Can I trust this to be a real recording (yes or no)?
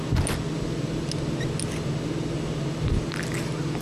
yes